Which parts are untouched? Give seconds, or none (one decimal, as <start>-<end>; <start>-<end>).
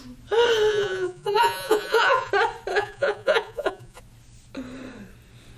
0.0-0.7; 2.3-2.7; 4.0-5.6